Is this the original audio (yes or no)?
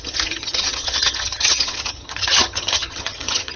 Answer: no